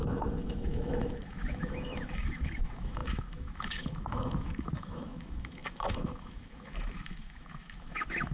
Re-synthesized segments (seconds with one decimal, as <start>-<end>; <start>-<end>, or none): 0.0-8.3